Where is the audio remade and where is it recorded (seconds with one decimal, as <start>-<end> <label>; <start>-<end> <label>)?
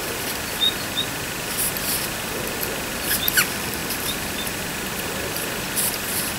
0.0-6.4 recorded